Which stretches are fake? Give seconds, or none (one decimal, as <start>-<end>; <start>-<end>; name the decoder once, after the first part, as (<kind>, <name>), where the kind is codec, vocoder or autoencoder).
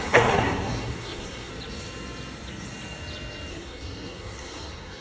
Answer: 0.0-1.5 (codec, SNAC); 3.5-5.0